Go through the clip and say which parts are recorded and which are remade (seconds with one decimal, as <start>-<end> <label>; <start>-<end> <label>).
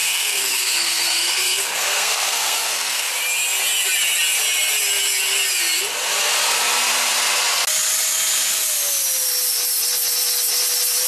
0.0-3.1 remade; 3.1-11.1 recorded